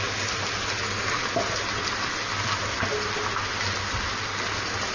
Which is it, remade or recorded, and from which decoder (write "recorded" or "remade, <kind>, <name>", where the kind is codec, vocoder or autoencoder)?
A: recorded